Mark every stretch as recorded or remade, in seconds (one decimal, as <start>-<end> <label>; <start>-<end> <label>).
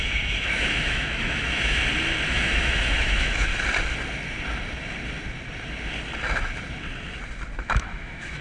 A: 0.0-1.8 remade; 1.8-2.3 recorded; 2.3-3.5 remade; 3.5-7.6 recorded; 7.6-8.4 remade